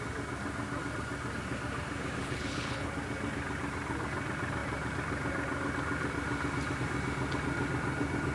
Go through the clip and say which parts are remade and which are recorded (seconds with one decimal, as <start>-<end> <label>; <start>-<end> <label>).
0.0-2.2 recorded; 2.2-2.9 remade; 2.9-8.3 recorded